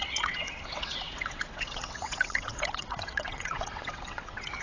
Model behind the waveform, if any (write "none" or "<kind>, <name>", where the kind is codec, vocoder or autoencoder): vocoder, WaveNeXt